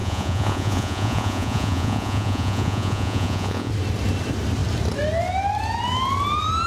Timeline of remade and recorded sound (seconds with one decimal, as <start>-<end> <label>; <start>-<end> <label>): 0.0-3.7 remade; 3.7-6.7 recorded